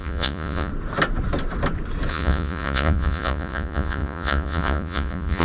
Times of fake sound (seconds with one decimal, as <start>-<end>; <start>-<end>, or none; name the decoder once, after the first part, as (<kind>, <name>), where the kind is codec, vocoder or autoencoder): 0.0-0.7 (vocoder, Vocos); 2.1-5.4